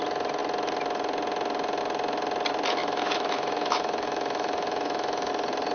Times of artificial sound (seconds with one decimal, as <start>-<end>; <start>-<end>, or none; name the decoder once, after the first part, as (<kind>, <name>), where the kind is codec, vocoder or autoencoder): 2.8-5.3 (autoencoder, DAC-VAE)